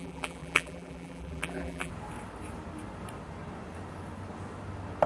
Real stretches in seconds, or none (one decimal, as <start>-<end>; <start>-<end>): 1.9-5.1

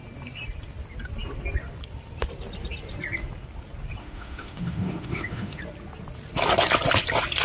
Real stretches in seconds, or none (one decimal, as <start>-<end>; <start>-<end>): 0.0-4.0; 5.6-7.4

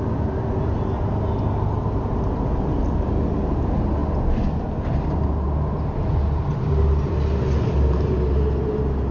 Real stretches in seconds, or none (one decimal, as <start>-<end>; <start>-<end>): 0.0-9.1

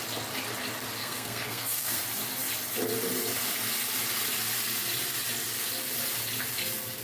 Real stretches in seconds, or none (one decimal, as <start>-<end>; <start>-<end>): 0.0-1.0; 2.0-7.0